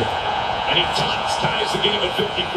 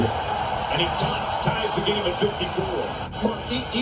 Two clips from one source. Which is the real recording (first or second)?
second